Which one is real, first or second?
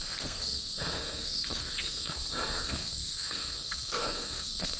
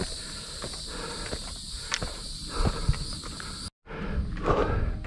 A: second